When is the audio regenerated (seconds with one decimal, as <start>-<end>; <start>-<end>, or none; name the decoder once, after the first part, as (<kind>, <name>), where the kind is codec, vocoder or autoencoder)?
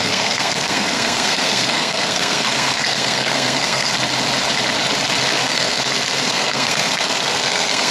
0.0-3.9 (codec, SNAC); 5.4-7.9